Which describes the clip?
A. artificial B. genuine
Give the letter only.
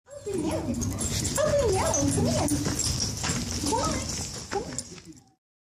B